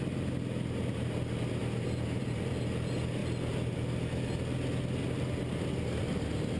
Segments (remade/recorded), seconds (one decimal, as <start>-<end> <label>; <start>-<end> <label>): 0.0-1.6 recorded; 1.6-2.6 remade; 2.6-6.6 recorded